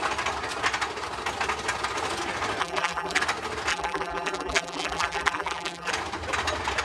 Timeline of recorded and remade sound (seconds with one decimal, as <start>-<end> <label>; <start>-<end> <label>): 0.0-2.6 recorded; 2.6-3.2 remade; 3.2-3.7 recorded; 3.7-5.9 remade; 5.9-6.8 recorded